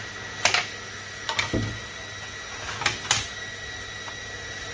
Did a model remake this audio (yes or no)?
no